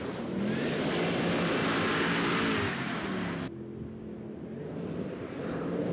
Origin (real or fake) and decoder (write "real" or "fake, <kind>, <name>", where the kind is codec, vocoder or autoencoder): real